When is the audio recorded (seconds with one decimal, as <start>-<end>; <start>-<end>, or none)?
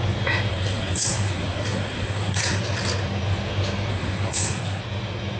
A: 0.0-0.5; 2.6-3.9; 4.8-5.4